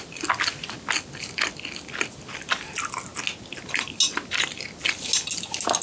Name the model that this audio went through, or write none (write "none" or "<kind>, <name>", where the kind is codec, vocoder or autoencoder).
none